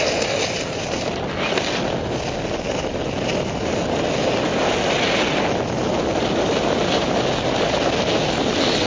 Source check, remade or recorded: recorded